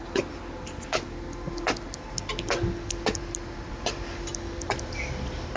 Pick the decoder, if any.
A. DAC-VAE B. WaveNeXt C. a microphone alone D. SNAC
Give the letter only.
C